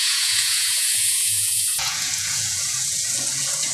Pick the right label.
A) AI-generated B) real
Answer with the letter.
A